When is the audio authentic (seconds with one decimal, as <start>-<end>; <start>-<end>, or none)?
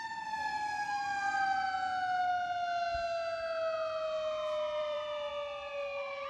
0.0-4.8; 5.3-6.3